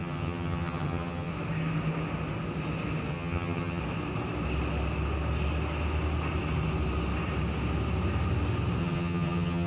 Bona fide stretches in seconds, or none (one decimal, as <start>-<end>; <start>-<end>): 1.3-3.1; 3.8-8.8

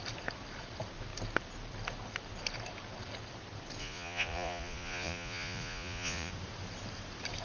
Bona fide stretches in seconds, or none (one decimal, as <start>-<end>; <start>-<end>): 0.0-3.8; 6.3-7.4